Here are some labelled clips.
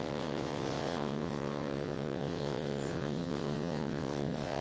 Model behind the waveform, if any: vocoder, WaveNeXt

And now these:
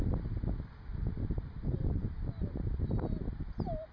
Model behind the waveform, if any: none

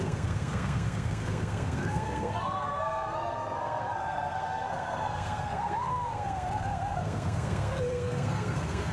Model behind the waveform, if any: codec, SNAC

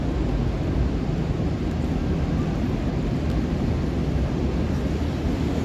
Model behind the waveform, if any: none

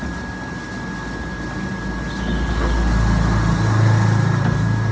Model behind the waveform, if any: none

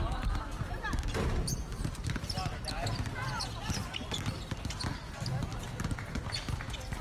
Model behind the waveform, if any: none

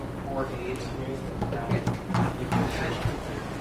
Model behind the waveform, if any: none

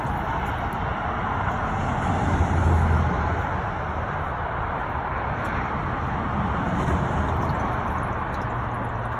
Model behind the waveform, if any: none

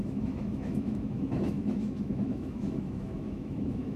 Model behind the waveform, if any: autoencoder, DAC-VAE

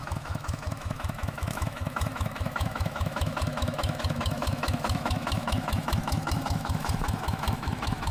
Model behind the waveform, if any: autoencoder, DAC-VAE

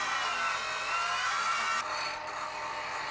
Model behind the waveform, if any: none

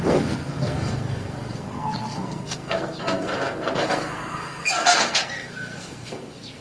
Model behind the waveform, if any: codec, SNAC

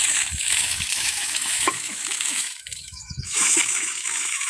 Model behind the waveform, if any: autoencoder, DAC-VAE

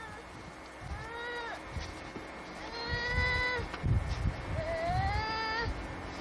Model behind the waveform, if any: none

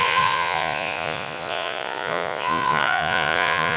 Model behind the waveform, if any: vocoder, Vocos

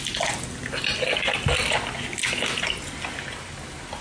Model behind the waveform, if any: none